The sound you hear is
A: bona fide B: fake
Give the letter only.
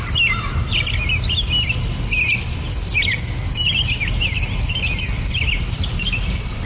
A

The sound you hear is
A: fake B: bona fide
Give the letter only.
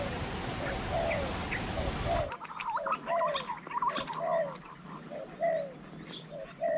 B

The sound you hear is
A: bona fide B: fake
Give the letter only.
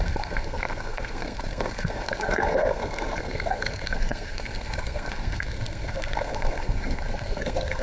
B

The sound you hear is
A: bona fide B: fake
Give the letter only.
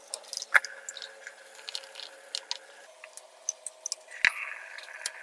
A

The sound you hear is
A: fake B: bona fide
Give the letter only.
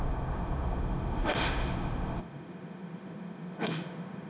A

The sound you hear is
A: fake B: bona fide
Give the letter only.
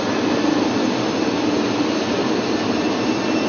B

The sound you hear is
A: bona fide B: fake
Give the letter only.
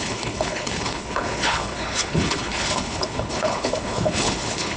B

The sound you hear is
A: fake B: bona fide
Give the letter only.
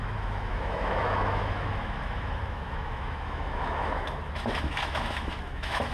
A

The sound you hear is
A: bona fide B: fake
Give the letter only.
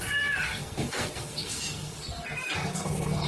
B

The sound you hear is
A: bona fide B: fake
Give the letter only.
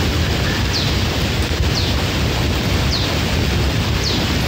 A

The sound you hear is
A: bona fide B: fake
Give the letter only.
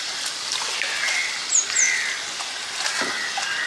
A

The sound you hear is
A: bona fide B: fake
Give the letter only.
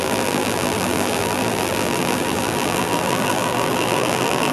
B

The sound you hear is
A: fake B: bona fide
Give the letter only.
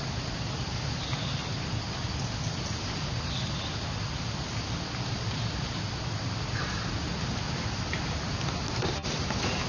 B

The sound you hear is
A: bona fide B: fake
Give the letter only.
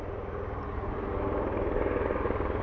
A